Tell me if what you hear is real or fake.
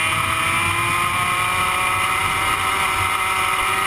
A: real